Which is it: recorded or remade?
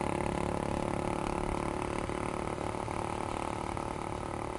recorded